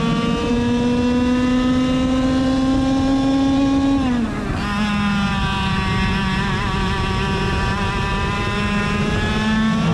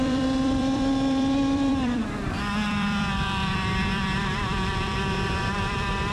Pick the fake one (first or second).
second